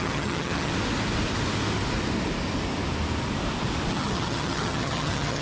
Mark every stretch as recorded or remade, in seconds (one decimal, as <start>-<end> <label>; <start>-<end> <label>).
0.0-0.7 remade; 0.7-3.9 recorded; 3.9-5.4 remade